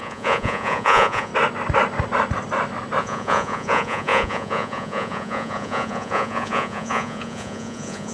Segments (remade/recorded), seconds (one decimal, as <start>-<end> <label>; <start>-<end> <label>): 0.0-1.3 remade; 1.3-3.0 recorded; 3.0-8.1 remade